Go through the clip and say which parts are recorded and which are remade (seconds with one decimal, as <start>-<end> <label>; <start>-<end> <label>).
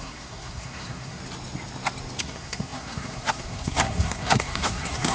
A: 0.0-1.2 remade; 1.2-2.2 recorded; 2.2-5.1 remade